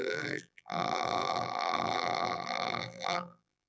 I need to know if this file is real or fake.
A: fake